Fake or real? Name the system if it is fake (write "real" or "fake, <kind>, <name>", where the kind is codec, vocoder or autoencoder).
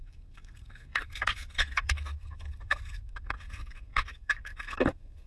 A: fake, codec, SNAC